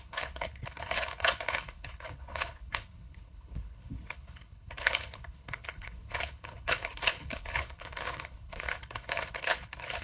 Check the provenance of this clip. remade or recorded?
remade